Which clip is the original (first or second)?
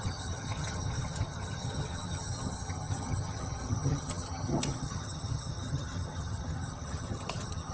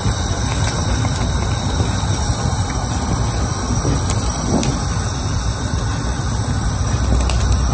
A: second